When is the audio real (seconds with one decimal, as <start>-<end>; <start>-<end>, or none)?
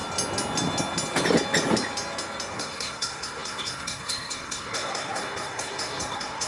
0.0-2.5